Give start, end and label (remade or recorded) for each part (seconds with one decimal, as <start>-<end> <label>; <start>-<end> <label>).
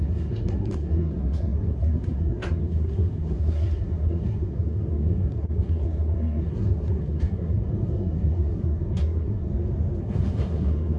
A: 0.0-9.5 remade; 9.5-10.0 recorded; 10.0-11.0 remade